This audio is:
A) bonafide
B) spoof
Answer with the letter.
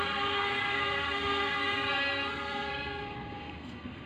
B